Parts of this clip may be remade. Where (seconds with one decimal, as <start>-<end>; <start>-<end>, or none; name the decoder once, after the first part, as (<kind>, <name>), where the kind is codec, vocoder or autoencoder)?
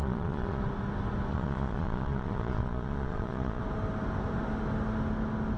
0.0-0.6 (vocoder, Vocos); 1.3-3.6